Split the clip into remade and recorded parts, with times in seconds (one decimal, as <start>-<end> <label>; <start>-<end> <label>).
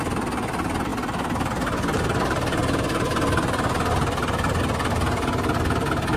0.0-6.2 recorded